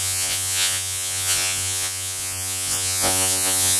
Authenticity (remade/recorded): remade